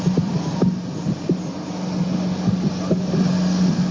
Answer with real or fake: real